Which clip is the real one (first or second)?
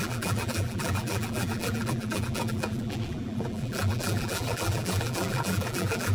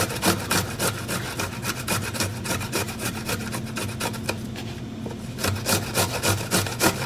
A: second